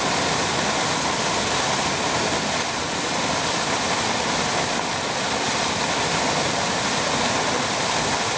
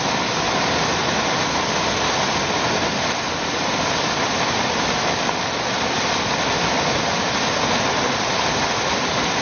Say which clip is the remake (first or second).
first